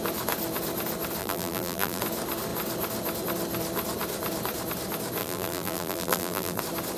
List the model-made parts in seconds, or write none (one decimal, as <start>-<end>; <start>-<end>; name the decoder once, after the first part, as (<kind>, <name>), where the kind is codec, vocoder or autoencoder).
1.2-2.0 (vocoder, BigVGAN v2); 5.2-6.6